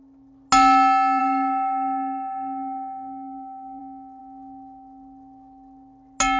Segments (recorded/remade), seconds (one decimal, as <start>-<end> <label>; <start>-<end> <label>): 0.0-1.2 recorded; 1.2-3.8 remade; 3.8-6.4 recorded